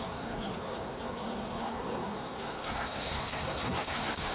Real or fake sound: fake